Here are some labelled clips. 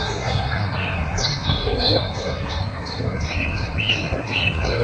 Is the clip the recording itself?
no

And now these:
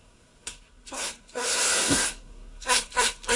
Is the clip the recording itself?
no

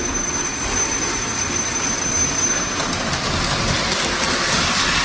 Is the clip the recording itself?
yes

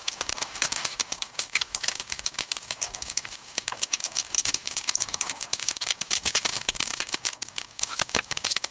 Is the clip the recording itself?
no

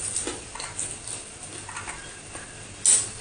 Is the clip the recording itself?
yes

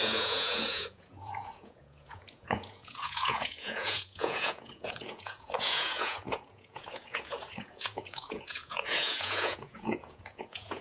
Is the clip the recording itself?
no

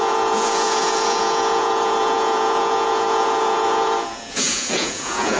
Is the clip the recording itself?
no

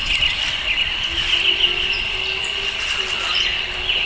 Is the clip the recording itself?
yes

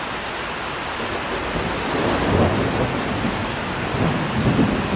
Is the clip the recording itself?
yes